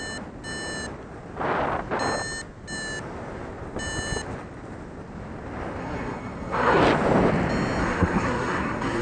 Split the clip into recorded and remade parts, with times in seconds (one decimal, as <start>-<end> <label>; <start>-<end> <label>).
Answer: 0.0-5.8 recorded; 5.8-6.8 remade; 6.8-7.8 recorded; 7.8-9.0 remade